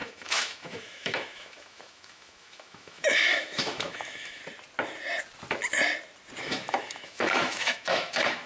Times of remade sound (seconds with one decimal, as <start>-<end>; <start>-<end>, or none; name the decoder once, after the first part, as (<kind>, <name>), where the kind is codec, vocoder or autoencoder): 0.0-4.4 (autoencoder, DAC-VAE); 6.4-8.5